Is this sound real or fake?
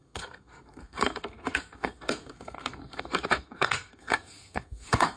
fake